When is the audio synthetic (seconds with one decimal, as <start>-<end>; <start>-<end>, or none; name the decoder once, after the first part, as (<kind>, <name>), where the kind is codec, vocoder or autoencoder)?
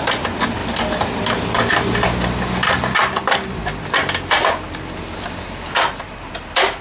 3.0-6.3 (vocoder, BigVGAN v2)